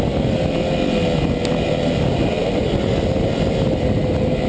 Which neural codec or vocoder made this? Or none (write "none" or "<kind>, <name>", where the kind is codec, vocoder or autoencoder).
none